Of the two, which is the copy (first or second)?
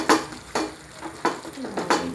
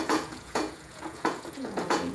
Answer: second